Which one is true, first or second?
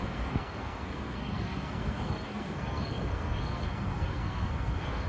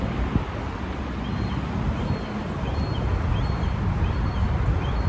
second